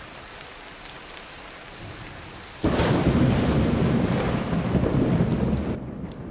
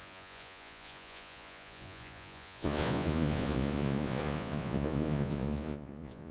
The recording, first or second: first